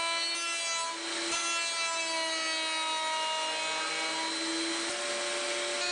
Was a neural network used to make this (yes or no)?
no